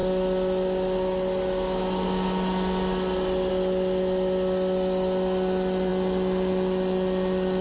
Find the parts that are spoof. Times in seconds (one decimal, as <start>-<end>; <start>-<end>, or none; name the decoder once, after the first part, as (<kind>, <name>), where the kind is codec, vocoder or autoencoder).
none